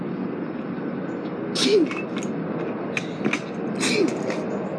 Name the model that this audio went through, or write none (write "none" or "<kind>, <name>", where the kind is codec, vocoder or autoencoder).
none